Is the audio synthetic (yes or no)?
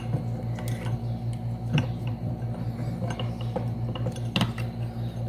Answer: no